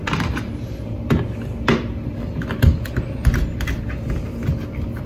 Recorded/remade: recorded